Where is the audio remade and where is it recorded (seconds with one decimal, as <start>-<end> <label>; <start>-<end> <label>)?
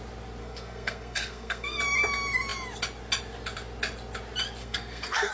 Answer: 0.0-0.4 recorded; 0.4-1.8 remade; 1.8-4.6 recorded; 4.6-5.3 remade